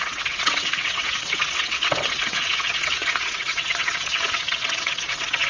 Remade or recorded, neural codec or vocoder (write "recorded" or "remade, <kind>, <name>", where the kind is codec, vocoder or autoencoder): remade, vocoder, WaveNeXt